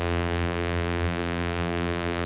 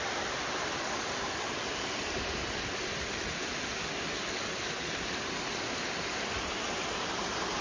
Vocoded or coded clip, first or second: first